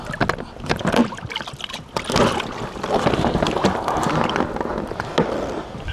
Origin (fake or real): real